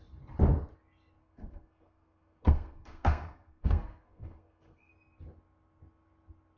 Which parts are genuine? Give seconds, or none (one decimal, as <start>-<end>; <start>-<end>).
0.0-1.2; 4.9-6.6